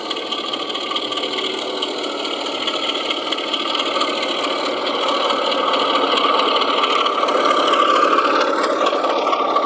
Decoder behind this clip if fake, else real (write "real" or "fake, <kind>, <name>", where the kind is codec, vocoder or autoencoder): real